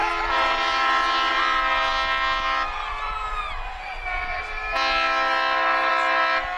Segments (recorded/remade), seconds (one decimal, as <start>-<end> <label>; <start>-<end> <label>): 0.0-6.6 recorded